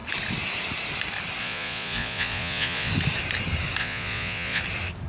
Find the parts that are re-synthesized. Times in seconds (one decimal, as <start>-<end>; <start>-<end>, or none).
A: 1.4-2.9; 3.8-4.6